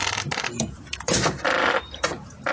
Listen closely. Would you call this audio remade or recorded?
remade